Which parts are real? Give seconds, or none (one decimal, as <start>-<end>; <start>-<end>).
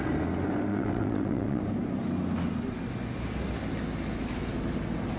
0.0-0.7; 1.6-5.2